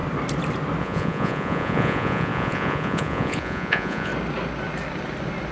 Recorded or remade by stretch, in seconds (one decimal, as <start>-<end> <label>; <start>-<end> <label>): 0.0-0.8 recorded; 0.8-4.1 remade; 4.1-5.5 recorded